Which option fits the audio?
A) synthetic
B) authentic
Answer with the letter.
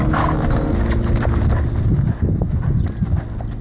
B